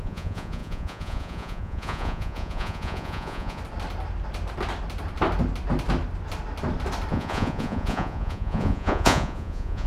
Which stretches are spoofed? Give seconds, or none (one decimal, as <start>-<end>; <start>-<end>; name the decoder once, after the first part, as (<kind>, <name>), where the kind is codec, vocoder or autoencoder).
0.0-3.6 (vocoder, Vocos); 7.1-9.9